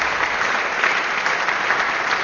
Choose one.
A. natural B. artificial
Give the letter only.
A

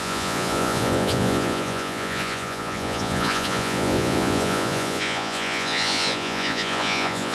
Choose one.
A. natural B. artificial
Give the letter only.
B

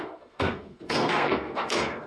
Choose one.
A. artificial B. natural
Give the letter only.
A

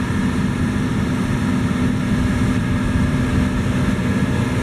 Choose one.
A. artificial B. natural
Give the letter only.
B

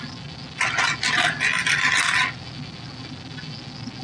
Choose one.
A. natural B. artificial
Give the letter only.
A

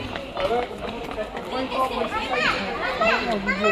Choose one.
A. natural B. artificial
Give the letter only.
A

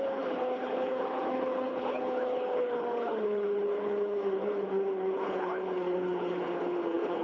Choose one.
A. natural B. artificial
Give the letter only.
B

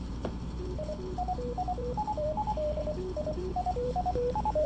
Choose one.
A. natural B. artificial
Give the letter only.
B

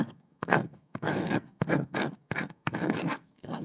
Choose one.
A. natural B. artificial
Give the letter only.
B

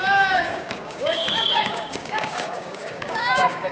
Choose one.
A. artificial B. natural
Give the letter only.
A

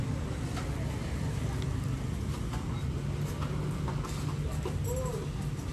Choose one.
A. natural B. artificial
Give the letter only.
A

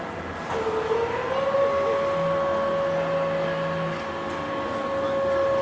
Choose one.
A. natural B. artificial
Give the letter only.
A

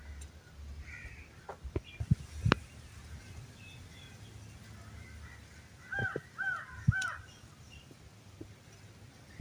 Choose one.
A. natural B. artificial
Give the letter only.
A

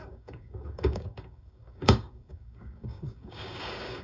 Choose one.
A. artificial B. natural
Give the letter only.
A